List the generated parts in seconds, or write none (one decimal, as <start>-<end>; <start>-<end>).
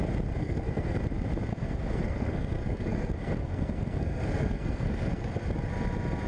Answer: 0.4-1.0; 1.5-5.3